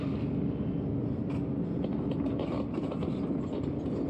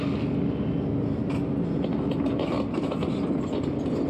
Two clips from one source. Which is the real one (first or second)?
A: second